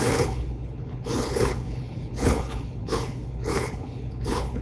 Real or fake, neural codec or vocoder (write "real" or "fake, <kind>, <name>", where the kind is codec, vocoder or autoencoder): fake, codec, HILCodec